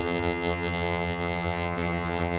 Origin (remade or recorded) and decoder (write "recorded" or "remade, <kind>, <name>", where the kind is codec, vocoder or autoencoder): remade, vocoder, HiFi-GAN